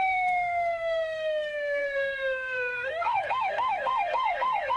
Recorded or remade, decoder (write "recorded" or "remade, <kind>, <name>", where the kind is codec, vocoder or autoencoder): remade, codec, SNAC